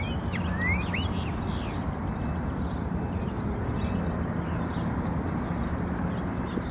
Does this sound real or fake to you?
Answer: real